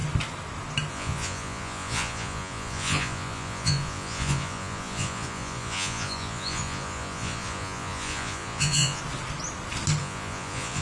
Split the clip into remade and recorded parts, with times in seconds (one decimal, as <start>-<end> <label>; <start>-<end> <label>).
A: 0.0-0.9 recorded; 0.9-9.0 remade; 9.0-10.0 recorded; 10.0-10.8 remade